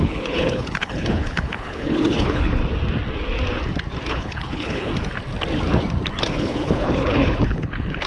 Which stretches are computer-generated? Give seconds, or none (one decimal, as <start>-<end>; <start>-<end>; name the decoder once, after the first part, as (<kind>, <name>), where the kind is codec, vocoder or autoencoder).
0.0-2.6 (codec, HILCodec); 4.1-4.9; 6.4-8.1